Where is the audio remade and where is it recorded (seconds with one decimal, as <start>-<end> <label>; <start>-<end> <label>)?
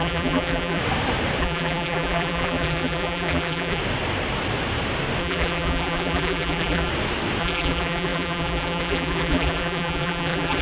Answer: 0.0-0.8 remade; 0.8-1.4 recorded; 1.4-3.8 remade; 3.8-5.2 recorded; 5.2-6.9 remade; 6.9-7.4 recorded; 7.4-10.6 remade